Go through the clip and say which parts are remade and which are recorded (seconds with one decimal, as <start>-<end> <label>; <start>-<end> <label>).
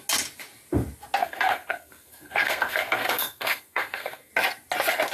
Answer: 0.0-1.2 recorded; 1.2-4.3 remade; 4.3-5.1 recorded